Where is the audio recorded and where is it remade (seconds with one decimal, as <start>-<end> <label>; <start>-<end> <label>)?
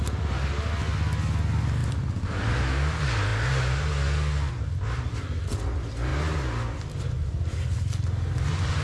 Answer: 0.0-8.8 recorded